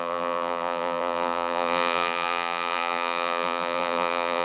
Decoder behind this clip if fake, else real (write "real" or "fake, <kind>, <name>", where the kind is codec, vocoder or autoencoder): fake, vocoder, BigVGAN v2